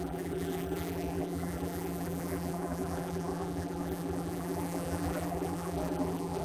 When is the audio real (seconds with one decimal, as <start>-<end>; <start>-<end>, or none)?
none